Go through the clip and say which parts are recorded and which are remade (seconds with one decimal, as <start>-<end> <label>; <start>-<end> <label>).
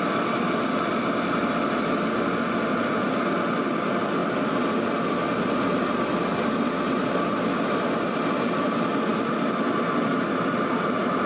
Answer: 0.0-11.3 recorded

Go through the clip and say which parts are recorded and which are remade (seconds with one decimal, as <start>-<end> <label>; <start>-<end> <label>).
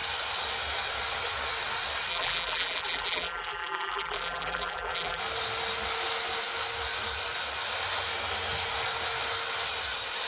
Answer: 0.0-2.1 recorded; 2.1-5.2 remade; 5.2-10.3 recorded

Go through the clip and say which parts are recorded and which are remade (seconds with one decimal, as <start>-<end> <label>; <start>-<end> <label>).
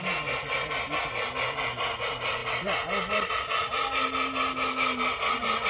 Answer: 0.0-5.7 recorded